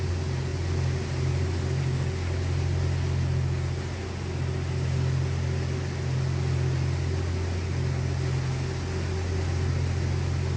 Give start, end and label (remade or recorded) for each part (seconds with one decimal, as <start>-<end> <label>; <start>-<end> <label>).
0.0-10.6 recorded